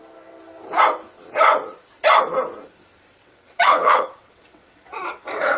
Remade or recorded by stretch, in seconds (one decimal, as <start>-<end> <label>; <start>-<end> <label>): 0.0-3.2 recorded; 3.2-5.6 remade